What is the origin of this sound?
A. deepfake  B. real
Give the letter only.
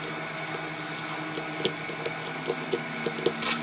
B